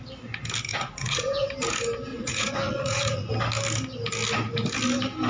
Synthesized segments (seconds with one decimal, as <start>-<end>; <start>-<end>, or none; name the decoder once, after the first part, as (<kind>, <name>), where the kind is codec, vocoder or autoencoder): 0.7-1.5 (vocoder, Vocos); 2.1-3.3